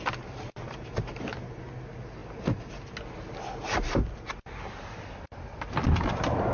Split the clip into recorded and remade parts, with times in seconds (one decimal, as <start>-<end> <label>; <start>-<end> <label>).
0.0-6.5 recorded